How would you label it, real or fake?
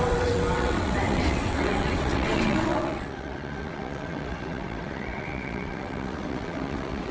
fake